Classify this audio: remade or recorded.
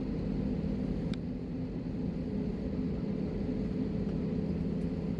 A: recorded